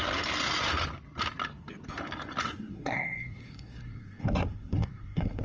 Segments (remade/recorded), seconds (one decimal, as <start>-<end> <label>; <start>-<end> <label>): 0.0-2.4 recorded; 2.4-5.4 remade